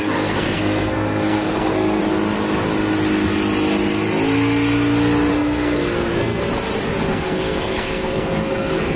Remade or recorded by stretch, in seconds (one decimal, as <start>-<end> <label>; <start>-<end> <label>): 0.0-2.0 remade; 2.0-5.3 recorded; 5.3-6.4 remade; 6.4-7.1 recorded; 7.1-9.0 remade